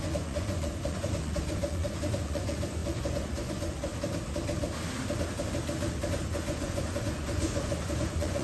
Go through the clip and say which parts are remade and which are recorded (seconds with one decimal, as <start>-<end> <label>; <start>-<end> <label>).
0.0-3.9 remade; 3.9-6.1 recorded; 6.1-8.4 remade